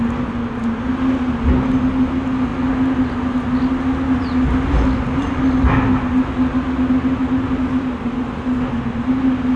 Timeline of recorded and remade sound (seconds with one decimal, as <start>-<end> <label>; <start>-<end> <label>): 0.0-9.6 recorded